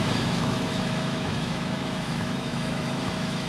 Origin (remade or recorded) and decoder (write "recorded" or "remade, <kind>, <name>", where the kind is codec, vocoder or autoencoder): remade, autoencoder, DAC-VAE